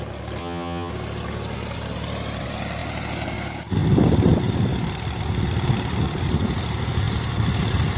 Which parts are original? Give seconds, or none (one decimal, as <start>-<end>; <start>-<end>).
0.0-0.4; 0.9-8.0